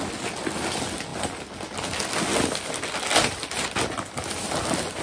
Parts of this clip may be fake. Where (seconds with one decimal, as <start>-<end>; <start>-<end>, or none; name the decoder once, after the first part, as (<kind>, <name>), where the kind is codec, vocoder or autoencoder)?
none